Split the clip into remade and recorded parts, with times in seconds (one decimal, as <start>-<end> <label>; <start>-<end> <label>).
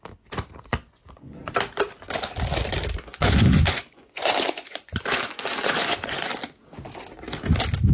0.0-0.7 recorded; 0.7-1.5 remade; 1.5-3.1 recorded; 3.1-6.3 remade; 6.3-7.9 recorded